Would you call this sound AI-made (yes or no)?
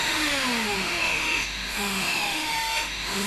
yes